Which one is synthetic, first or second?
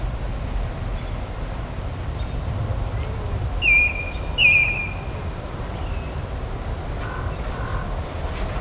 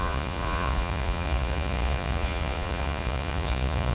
second